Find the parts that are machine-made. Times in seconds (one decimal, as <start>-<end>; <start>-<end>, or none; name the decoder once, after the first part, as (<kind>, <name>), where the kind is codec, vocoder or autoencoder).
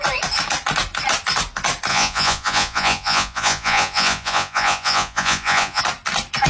1.9-5.8 (vocoder, Vocos)